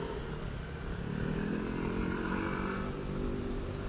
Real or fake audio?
real